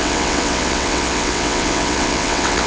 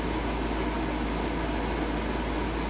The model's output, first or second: first